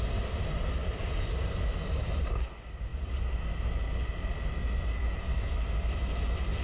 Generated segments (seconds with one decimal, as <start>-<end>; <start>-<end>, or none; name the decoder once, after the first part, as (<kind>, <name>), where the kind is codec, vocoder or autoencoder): none